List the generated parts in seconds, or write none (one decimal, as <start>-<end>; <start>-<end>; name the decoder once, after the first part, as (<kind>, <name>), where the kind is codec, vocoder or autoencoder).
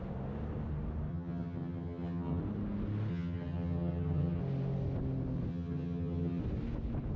1.1-2.4 (vocoder, HiFi-GAN); 3.1-4.4; 5.5-6.4